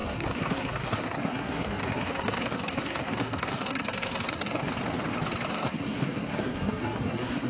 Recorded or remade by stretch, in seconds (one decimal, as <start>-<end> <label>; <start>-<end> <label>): 0.0-4.7 remade; 4.7-5.5 recorded; 5.5-7.5 remade